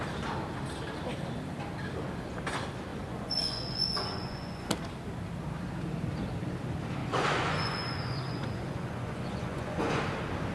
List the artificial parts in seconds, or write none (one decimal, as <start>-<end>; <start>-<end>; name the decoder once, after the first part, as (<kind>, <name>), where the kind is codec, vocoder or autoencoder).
2.9-4.7 (vocoder, Vocos); 7.0-10.0